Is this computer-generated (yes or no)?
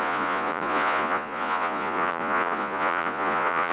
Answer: yes